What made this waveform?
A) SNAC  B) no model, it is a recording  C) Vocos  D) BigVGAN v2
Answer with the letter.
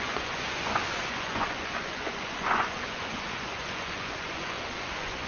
C